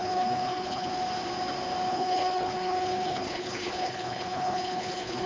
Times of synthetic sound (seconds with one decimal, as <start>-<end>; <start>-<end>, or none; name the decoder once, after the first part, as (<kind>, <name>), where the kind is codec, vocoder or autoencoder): 0.0-0.9 (codec, HILCodec); 1.9-5.3